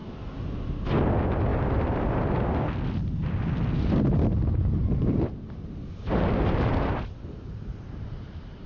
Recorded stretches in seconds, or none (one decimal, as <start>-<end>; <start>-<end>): 0.0-1.5; 2.2-4.6